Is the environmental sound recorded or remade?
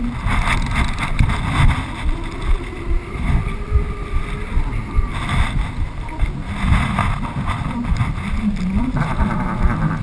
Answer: recorded